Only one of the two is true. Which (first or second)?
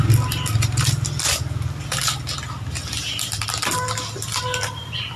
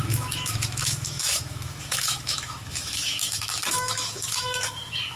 first